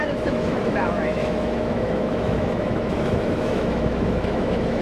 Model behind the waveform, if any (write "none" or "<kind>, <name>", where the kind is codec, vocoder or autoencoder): autoencoder, DAC-VAE